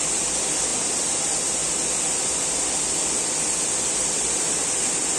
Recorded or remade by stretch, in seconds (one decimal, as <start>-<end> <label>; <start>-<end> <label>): 0.0-5.2 recorded